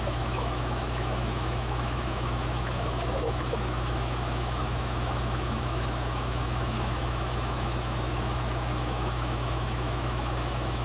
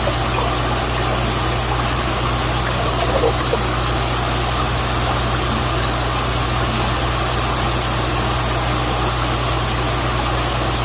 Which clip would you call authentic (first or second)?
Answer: second